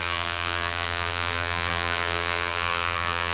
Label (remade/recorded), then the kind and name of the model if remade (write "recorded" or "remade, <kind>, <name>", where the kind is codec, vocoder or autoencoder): remade, vocoder, BigVGAN v2